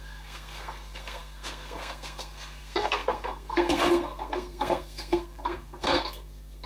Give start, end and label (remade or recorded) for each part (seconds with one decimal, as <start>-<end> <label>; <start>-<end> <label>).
0.0-6.7 remade